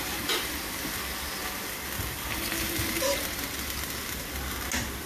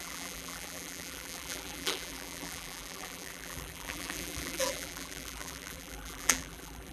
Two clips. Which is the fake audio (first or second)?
second